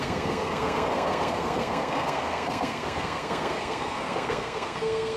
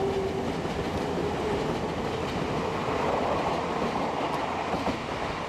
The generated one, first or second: first